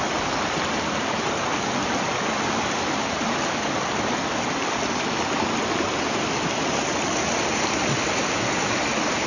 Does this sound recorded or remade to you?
recorded